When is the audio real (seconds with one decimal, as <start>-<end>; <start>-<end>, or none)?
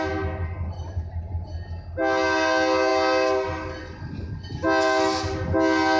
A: 0.0-6.0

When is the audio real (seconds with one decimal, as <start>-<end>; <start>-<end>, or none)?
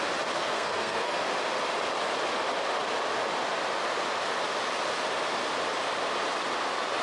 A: 0.0-0.4; 1.2-7.0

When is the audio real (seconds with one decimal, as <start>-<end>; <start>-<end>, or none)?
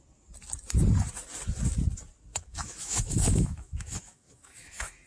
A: 0.0-2.3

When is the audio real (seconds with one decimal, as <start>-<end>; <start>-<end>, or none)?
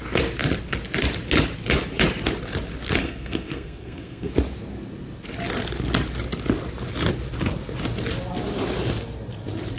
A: 0.0-3.0; 4.3-9.8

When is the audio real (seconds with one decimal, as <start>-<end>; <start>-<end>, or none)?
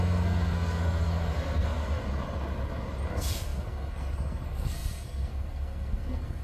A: 2.0-3.1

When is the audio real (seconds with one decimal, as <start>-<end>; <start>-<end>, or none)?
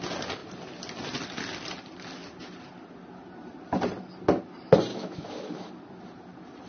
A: 0.0-4.9; 5.7-6.7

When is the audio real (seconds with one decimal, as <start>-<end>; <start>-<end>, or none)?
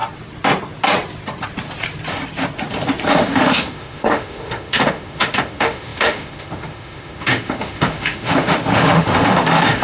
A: 0.0-3.1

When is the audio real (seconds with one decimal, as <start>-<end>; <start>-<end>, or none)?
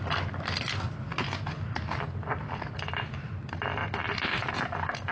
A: 1.1-2.4; 3.8-4.5